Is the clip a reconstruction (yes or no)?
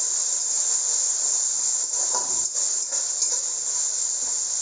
no